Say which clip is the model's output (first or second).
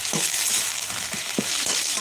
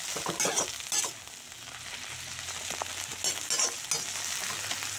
first